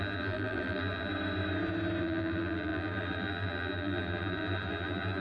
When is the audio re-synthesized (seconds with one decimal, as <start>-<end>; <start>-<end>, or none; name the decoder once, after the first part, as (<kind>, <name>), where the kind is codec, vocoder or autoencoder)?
0.0-1.1 (vocoder, BigVGAN v2); 2.0-5.2

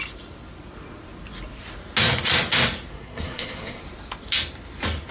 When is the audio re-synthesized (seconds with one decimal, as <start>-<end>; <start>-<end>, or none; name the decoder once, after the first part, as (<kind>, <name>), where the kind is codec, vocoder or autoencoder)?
2.9-3.8 (codec, SNAC)

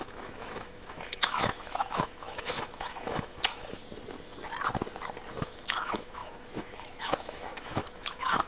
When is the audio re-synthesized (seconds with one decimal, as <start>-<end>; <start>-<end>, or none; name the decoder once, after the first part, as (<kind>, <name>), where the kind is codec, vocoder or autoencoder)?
0.0-3.8 (autoencoder, DAC-VAE); 5.4-8.5

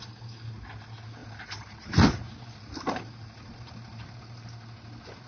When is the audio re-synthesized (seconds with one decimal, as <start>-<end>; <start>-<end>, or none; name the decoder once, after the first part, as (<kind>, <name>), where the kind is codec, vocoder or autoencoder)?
1.2-4.1 (vocoder, BigVGAN v2)

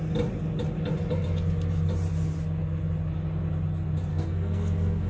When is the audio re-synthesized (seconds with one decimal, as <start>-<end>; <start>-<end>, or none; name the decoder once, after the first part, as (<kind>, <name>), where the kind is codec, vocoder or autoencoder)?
4.1-5.1 (codec, SNAC)

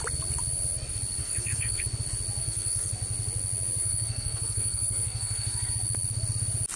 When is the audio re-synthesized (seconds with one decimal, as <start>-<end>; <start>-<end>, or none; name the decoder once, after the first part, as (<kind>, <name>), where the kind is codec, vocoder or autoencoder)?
1.2-1.8 (codec, SNAC); 2.4-2.9; 3.8-5.7